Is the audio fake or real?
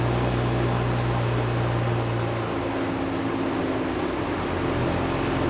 real